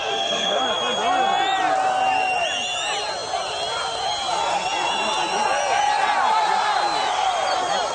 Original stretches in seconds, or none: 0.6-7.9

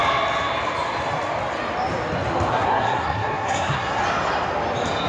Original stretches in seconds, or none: 0.0-2.5; 4.0-5.1

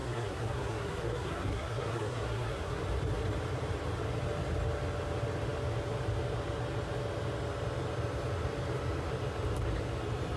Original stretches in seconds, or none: 2.8-10.4